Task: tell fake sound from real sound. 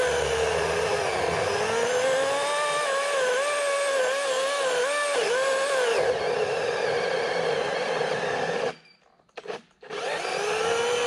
real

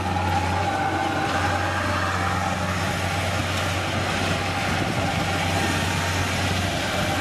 real